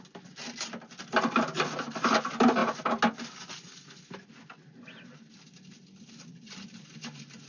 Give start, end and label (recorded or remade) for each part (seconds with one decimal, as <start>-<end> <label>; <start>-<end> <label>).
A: 0.0-7.5 recorded